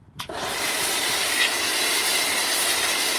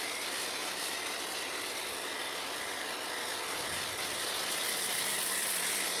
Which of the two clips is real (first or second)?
second